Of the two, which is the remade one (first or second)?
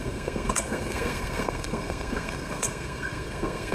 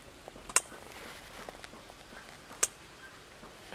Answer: first